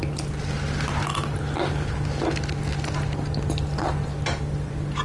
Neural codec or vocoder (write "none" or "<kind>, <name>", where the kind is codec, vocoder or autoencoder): none